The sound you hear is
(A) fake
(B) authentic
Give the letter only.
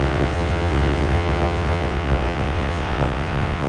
A